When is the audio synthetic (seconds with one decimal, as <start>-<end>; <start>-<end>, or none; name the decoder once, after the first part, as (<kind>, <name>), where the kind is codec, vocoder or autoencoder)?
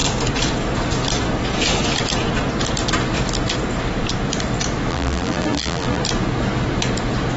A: 4.9-6.0 (vocoder, BigVGAN v2)